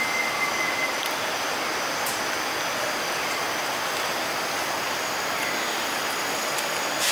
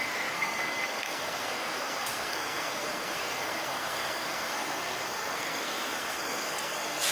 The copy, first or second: second